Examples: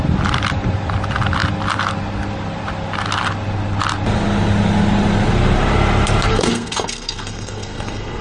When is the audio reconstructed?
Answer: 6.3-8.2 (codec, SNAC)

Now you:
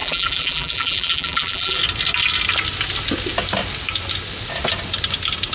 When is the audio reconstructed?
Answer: 0.0-1.8 (vocoder, BigVGAN v2)